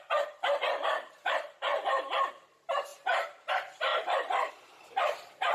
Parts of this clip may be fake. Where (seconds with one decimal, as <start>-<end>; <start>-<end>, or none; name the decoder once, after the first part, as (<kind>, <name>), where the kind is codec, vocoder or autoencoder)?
1.7-2.3 (vocoder, BigVGAN v2); 3.9-4.5